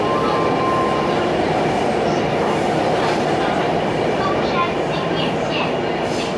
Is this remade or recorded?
recorded